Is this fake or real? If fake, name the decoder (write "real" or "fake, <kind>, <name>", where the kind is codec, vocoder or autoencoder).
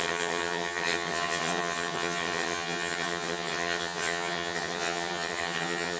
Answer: fake, vocoder, HiFi-GAN